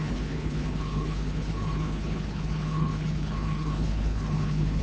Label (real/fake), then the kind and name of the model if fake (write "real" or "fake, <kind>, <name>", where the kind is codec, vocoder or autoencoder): fake, codec, HILCodec